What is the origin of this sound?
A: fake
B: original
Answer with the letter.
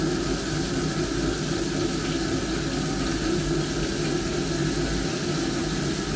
B